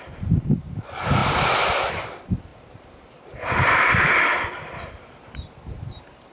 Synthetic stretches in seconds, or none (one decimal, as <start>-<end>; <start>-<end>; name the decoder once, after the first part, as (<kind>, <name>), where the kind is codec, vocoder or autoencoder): 0.0-6.3 (vocoder, BigVGAN v2)